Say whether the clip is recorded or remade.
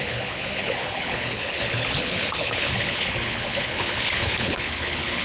remade